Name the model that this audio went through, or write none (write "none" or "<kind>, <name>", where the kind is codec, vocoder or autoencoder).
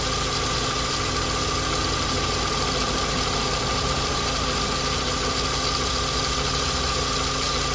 none